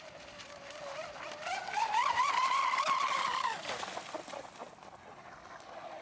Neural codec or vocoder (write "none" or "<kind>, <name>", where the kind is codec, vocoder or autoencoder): none